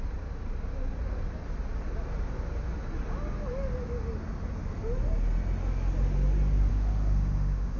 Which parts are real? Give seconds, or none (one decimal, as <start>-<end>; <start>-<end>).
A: 0.0-6.7